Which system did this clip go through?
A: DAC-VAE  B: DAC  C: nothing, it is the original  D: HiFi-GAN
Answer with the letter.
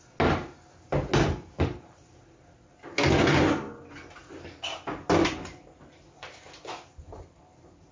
C